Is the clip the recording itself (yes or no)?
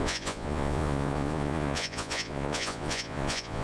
no